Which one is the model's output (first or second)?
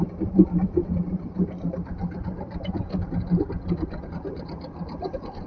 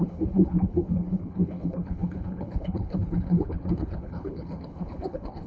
second